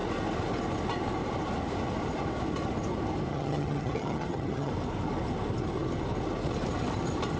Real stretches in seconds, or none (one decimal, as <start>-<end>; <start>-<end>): 0.0-3.3; 4.7-7.4